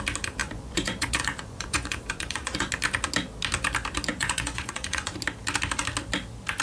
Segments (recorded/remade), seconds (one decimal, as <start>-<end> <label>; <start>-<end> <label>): 0.0-0.4 recorded; 0.4-2.7 remade; 2.7-4.1 recorded; 4.1-5.1 remade; 5.1-6.6 recorded